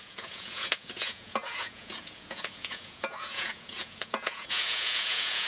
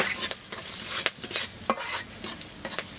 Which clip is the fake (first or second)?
first